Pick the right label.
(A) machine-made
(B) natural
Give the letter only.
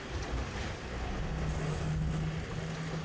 B